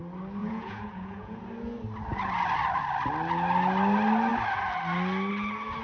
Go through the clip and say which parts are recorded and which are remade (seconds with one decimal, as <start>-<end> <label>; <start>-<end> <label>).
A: 0.0-0.4 recorded; 0.4-1.4 remade; 1.4-5.8 recorded